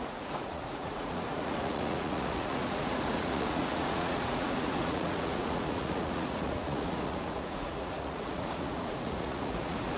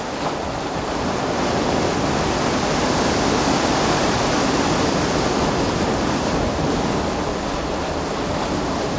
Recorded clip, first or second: second